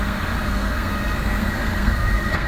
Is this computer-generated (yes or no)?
yes